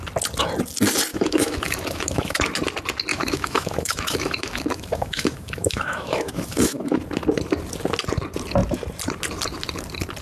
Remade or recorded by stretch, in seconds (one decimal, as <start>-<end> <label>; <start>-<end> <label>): 0.0-1.1 recorded; 1.1-2.4 remade; 2.4-3.1 recorded; 3.1-7.0 remade; 7.0-10.2 recorded